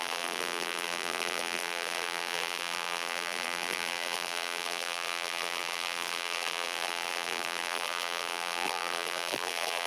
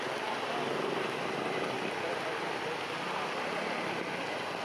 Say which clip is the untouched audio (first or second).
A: second